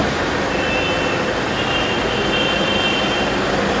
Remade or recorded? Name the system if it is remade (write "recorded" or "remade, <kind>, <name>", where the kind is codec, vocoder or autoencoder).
recorded